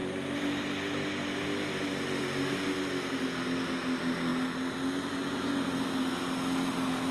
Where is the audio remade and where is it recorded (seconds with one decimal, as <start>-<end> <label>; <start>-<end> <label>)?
0.0-7.1 recorded